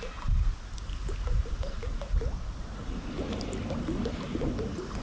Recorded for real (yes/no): yes